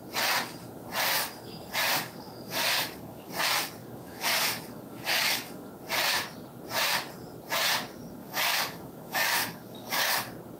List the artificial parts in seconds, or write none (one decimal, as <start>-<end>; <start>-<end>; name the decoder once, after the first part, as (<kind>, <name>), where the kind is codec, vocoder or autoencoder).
1.9-3.3 (codec, DAC); 3.8-5.7; 8.2-10.1